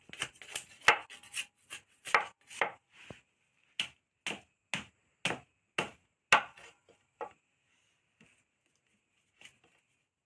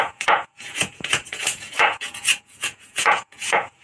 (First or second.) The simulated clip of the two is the second